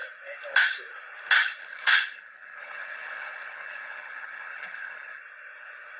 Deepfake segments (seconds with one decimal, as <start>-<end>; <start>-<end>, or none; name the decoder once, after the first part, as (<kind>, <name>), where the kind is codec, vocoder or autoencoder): 1.6-5.2 (codec, HILCodec)

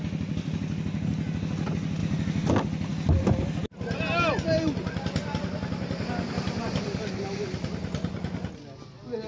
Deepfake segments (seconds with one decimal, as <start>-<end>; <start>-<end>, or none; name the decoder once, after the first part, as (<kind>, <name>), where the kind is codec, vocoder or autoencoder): none